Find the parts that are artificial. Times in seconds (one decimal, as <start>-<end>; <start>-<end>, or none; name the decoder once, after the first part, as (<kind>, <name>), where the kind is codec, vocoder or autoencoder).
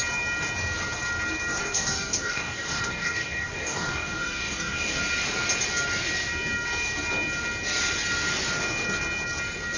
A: 1.6-5.0 (codec, DAC)